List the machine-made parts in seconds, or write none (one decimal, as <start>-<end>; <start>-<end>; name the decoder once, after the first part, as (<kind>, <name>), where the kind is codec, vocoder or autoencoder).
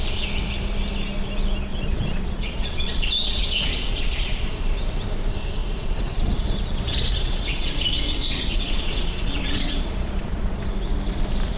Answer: 1.7-4.5 (vocoder, Vocos); 5.6-10.6